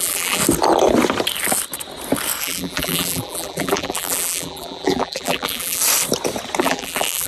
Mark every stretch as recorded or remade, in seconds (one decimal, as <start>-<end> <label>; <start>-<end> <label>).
0.0-0.4 remade; 0.4-2.4 recorded; 2.4-5.8 remade; 5.8-6.6 recorded; 6.6-7.3 remade